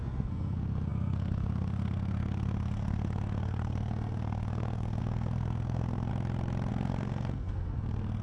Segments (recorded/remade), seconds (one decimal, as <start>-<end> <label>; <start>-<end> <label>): 0.0-6.1 remade; 6.1-6.7 recorded; 6.7-8.2 remade